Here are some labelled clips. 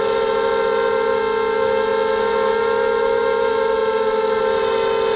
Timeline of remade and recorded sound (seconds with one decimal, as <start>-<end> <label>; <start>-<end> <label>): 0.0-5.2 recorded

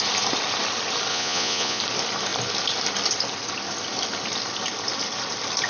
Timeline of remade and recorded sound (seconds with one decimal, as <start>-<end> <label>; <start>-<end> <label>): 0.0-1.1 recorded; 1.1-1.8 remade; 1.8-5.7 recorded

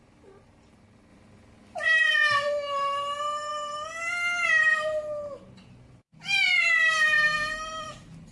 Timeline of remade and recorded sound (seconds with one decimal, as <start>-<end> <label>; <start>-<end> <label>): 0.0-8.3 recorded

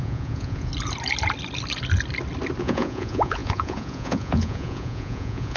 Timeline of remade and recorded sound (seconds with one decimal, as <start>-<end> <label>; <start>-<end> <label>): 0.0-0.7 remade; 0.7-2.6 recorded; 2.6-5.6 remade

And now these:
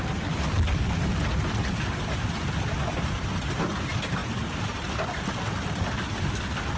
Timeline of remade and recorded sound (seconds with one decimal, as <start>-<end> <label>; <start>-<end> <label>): 0.0-6.8 recorded